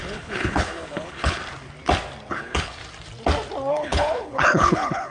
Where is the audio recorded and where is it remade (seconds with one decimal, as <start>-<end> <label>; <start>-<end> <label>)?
0.0-1.4 remade; 1.4-2.3 recorded; 2.3-2.8 remade; 2.8-3.7 recorded; 3.7-5.1 remade